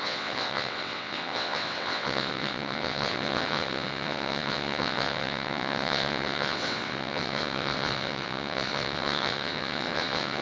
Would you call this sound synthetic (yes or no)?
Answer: yes